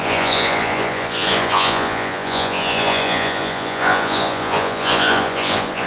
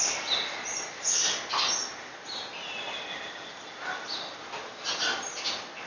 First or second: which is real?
second